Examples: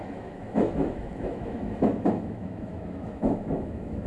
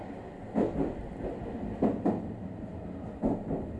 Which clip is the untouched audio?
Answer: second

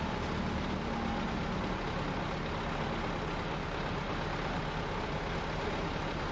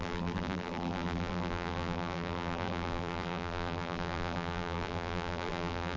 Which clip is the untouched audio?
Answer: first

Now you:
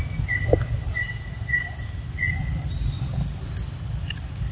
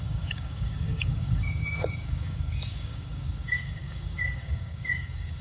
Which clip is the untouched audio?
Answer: first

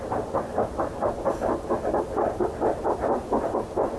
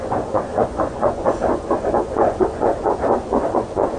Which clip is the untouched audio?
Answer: first